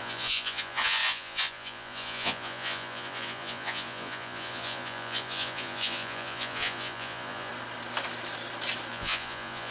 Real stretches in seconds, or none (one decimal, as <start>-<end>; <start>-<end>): 7.5-8.9